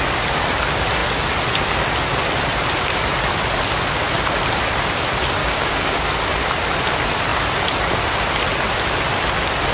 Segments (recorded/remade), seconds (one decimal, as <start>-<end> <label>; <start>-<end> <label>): 0.0-5.4 recorded; 5.4-6.0 remade; 6.0-9.7 recorded